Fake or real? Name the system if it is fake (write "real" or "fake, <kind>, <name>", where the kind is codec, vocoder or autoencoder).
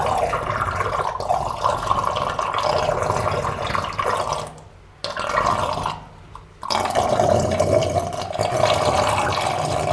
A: real